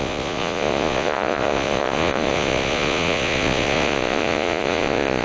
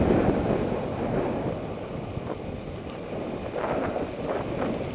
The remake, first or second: first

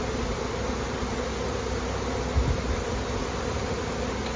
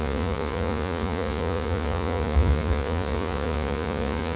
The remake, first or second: second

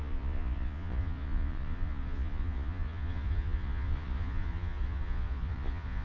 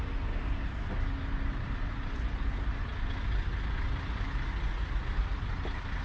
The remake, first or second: first